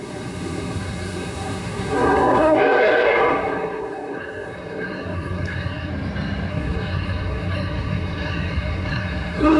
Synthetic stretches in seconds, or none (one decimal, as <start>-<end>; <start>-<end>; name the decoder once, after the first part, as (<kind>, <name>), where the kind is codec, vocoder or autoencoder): 0.0-5.9 (codec, SNAC); 6.5-9.6